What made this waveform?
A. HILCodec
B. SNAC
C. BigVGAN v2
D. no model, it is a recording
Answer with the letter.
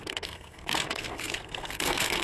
B